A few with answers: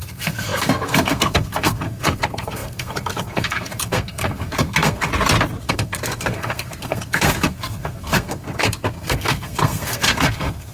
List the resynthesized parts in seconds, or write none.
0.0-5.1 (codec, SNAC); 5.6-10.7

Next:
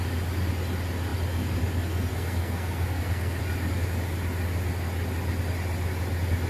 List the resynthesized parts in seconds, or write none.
2.1-3.4 (codec, SNAC)

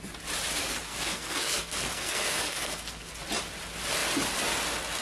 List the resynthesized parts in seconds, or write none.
0.6-3.1 (codec, SNAC)

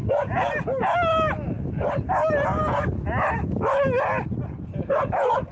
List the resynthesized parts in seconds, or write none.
none

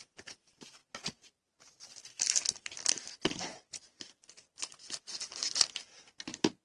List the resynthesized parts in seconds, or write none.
none